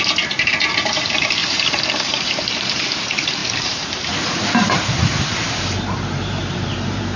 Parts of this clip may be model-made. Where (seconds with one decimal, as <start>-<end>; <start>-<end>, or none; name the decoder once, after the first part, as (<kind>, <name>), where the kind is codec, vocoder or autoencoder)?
0.0-1.4 (vocoder, BigVGAN v2); 1.9-7.2